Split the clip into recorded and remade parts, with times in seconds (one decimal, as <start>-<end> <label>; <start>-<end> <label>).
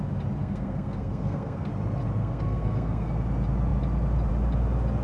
0.0-0.4 recorded; 0.4-1.7 remade; 1.7-2.2 recorded; 2.2-3.1 remade; 3.1-5.0 recorded